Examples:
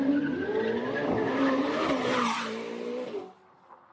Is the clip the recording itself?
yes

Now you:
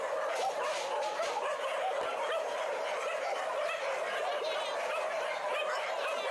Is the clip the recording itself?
yes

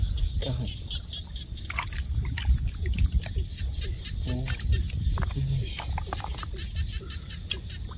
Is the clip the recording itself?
yes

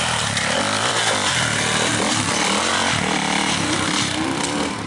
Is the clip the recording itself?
no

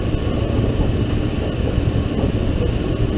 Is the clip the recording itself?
yes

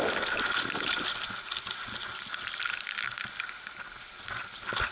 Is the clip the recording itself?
yes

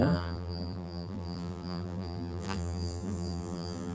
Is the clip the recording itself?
no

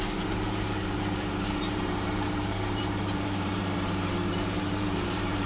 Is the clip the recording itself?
no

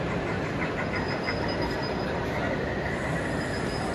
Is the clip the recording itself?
yes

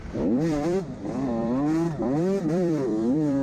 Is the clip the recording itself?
no